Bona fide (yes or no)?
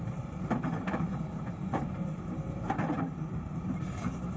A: no